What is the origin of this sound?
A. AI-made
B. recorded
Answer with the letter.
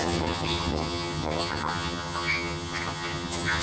A